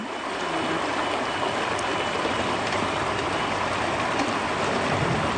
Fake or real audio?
fake